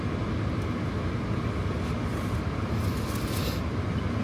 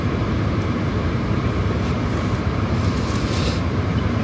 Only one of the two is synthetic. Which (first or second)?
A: second